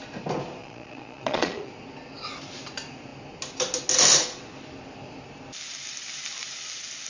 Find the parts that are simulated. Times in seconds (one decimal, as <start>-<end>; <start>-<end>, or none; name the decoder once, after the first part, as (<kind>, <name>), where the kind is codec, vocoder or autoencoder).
0.6-1.7 (vocoder, Vocos)